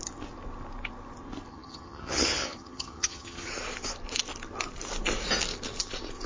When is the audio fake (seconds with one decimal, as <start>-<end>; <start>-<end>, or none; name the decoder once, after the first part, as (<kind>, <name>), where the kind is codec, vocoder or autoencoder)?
1.5-3.5 (vocoder, HiFi-GAN)